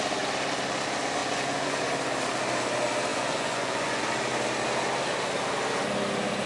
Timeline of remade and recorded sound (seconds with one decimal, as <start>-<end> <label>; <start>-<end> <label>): 0.0-1.2 recorded; 1.2-1.8 remade; 1.8-3.1 recorded; 3.1-4.0 remade; 4.0-6.5 recorded